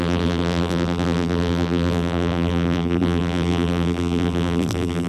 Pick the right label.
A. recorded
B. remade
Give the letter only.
B